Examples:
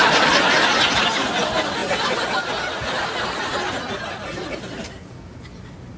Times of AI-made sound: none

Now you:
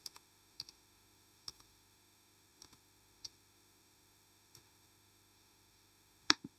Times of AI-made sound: 0.0-6.6 (autoencoder, DAC-VAE)

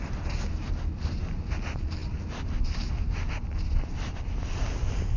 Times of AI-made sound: none

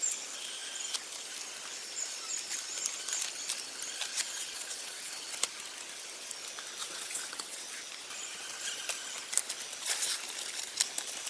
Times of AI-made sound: 4.1-5.1 (vocoder, WaveNeXt); 6.8-7.8

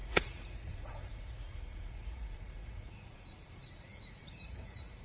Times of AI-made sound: 0.0-5.0 (vocoder, Vocos)

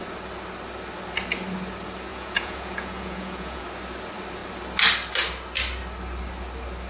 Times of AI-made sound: 2.1-3.6 (vocoder, Vocos)